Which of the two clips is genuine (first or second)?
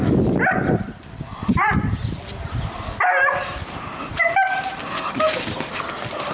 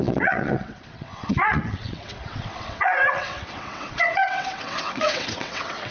first